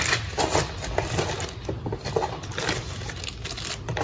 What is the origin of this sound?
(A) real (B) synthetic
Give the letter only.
A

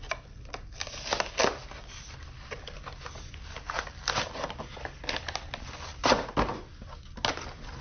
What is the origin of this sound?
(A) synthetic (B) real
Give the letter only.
B